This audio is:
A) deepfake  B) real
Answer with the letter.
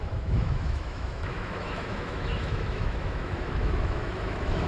A